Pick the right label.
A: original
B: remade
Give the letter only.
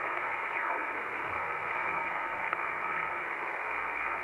B